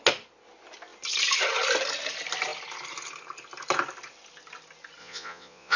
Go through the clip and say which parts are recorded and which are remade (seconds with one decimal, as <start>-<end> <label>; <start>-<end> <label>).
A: 0.0-5.0 recorded; 5.0-5.8 remade